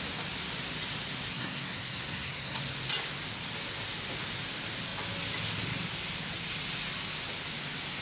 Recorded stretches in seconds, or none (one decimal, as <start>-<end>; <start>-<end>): 0.0-1.3; 2.6-8.0